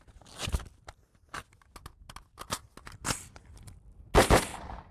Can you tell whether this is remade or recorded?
recorded